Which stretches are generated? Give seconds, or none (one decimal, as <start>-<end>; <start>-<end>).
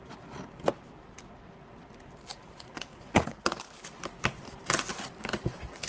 2.3-3.6